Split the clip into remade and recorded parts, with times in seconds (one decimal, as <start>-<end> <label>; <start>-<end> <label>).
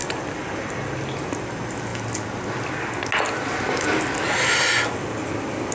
0.0-5.7 recorded